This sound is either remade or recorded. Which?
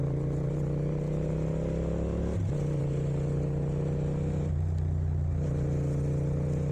recorded